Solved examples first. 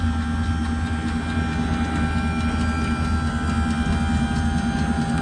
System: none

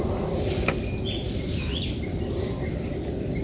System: none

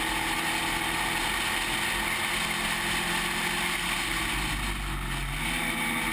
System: none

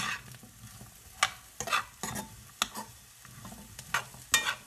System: none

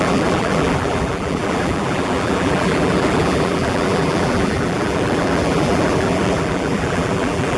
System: vocoder, BigVGAN v2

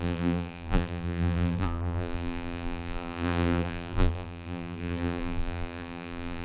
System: vocoder, BigVGAN v2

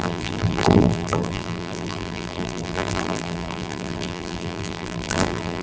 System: vocoder, BigVGAN v2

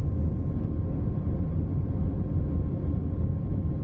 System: none